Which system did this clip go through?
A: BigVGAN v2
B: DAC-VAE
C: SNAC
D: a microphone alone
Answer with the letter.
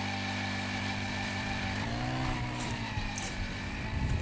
A